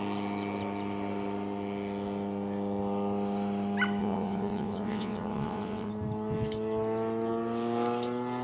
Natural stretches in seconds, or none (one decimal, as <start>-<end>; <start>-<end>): 0.0-4.0; 5.9-8.4

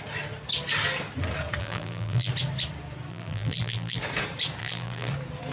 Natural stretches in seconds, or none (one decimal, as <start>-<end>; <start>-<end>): 0.0-1.6; 2.3-3.1; 4.0-4.6; 5.1-5.5

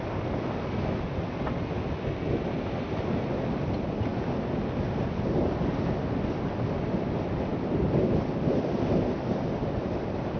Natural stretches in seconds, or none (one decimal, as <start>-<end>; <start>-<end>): 0.0-10.4

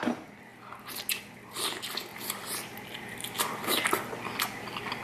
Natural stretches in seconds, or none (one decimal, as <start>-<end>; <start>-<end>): 0.0-2.1; 3.7-5.0

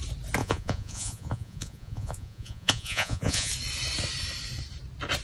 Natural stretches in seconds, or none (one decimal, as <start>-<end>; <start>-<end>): 0.0-0.4; 3.5-5.2

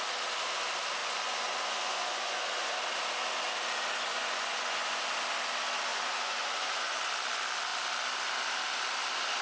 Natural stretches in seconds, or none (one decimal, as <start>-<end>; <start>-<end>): 0.0-1.0; 2.7-4.1; 5.0-5.9; 7.0-9.4

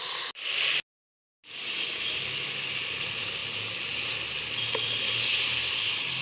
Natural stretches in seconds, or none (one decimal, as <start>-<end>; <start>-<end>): 0.0-6.2

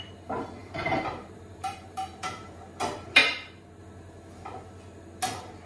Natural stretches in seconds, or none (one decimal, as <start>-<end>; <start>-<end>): 0.0-0.6; 2.6-3.2; 3.8-5.7